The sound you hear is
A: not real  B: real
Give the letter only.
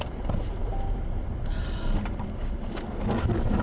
B